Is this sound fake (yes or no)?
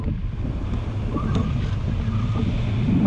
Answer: no